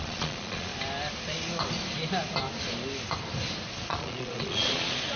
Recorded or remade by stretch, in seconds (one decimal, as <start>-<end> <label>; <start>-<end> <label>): 0.0-0.7 remade; 0.7-3.7 recorded; 3.7-5.2 remade